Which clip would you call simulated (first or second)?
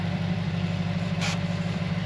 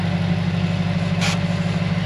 first